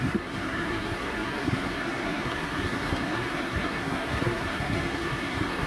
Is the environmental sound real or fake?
fake